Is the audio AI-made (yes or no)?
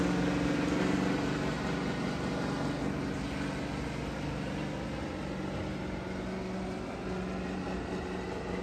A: no